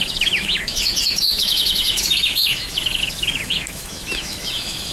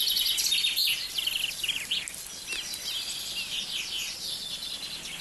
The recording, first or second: second